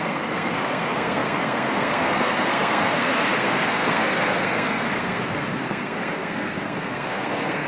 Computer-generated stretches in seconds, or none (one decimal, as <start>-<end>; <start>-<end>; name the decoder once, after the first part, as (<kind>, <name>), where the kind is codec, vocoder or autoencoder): 0.0-7.7 (codec, SNAC)

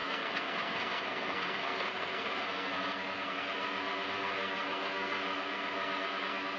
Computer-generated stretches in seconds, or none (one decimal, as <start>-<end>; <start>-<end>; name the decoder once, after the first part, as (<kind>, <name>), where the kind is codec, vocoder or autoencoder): 0.0-6.6 (codec, SNAC)